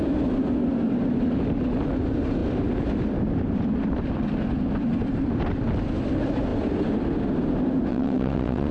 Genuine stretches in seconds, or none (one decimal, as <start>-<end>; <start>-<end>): 0.0-7.9